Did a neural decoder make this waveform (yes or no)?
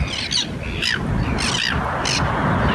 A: no